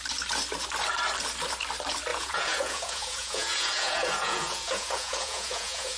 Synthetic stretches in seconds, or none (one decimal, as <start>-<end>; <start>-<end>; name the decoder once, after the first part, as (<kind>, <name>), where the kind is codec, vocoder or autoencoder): 2.1-6.0 (vocoder, Vocos)